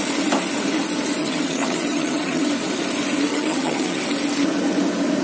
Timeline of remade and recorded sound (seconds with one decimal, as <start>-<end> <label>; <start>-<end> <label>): 0.0-1.2 recorded; 1.2-2.5 remade; 2.5-3.3 recorded; 3.3-4.0 remade; 4.0-5.2 recorded